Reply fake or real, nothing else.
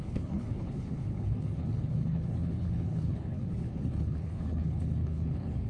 fake